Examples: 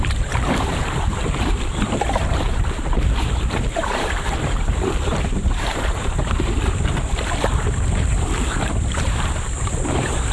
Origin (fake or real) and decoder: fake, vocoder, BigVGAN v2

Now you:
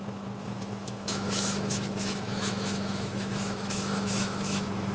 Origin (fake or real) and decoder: fake, autoencoder, DAC-VAE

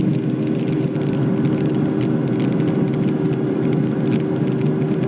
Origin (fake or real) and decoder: real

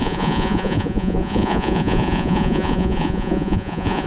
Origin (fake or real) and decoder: fake, vocoder, Vocos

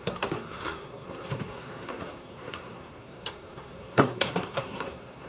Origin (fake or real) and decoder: fake, codec, SNAC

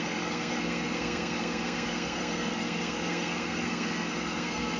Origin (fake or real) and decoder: fake, codec, SNAC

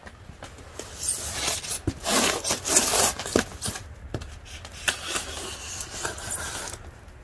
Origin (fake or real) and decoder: real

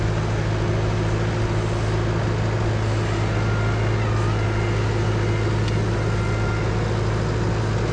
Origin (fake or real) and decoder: real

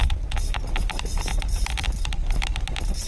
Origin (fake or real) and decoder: real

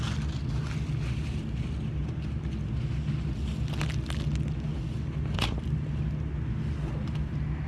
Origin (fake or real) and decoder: real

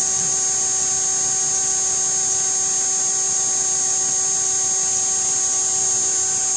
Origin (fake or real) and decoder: real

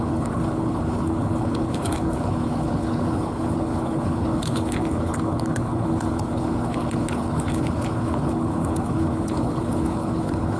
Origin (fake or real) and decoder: fake, codec, HILCodec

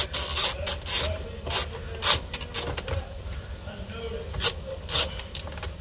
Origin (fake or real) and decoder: real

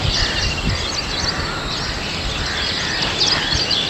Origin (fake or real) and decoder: real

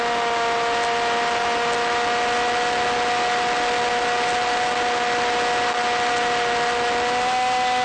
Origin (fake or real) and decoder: real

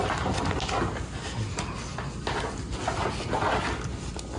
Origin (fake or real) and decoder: real